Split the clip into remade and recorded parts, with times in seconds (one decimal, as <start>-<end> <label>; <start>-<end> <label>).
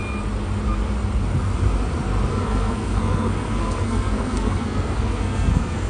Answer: 0.0-2.3 recorded; 2.3-5.9 remade